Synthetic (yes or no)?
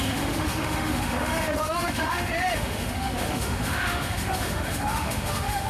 yes